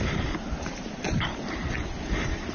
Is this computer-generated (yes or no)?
yes